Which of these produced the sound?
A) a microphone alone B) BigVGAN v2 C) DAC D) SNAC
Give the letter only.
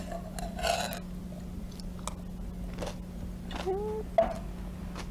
A